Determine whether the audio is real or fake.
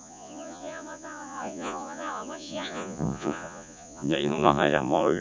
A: fake